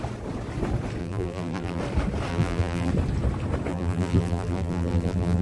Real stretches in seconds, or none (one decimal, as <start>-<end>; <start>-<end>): 0.0-1.0; 1.8-2.3; 2.9-3.7